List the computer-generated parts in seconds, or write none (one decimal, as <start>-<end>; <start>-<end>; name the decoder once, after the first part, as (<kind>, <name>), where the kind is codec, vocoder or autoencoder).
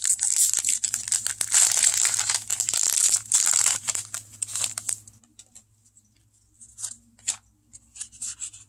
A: 2.5-4.0 (vocoder, BigVGAN v2)